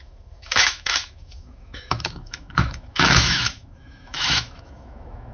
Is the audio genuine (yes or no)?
no